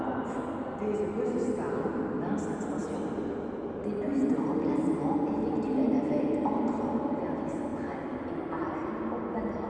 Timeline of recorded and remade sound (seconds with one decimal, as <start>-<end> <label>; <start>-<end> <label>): 0.0-9.7 recorded